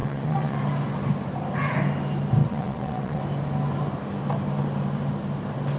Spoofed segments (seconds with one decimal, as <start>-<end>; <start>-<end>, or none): 0.0-0.6; 2.4-3.2